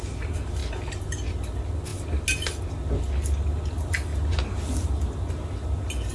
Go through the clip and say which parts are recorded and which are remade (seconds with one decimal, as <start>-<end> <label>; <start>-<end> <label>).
0.0-6.1 recorded